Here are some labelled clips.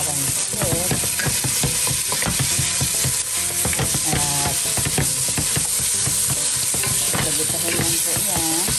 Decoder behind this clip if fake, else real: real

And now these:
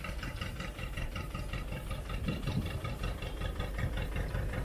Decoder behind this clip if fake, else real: fake, vocoder, BigVGAN v2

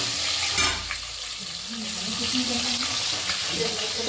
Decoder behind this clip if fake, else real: real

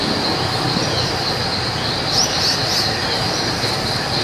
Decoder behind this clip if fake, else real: real